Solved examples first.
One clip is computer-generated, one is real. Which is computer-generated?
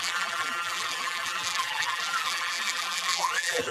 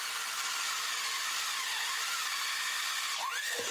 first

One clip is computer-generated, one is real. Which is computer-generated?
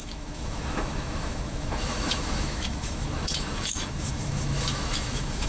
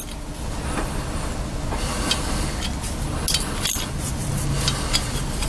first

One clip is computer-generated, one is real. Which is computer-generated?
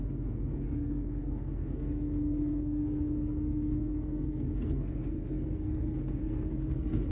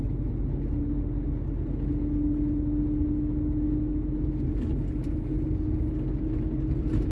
first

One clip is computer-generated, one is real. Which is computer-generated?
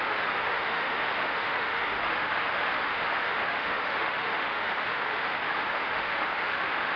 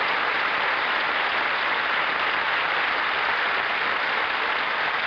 first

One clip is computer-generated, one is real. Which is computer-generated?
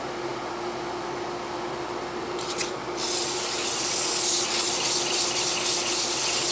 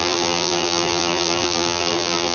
second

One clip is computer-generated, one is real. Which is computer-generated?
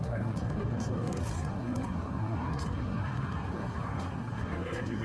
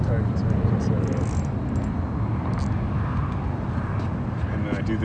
first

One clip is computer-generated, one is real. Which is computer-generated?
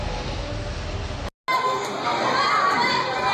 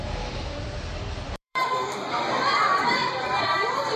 second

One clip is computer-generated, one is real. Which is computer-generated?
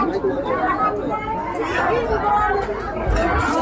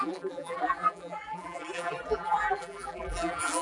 second